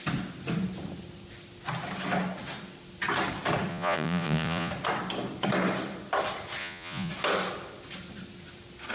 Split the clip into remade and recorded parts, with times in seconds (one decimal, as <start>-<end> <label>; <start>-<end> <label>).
0.0-3.7 recorded; 3.7-4.7 remade; 4.7-6.6 recorded; 6.6-7.1 remade; 7.1-8.9 recorded